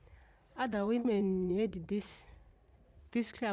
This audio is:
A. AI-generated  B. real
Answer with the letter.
A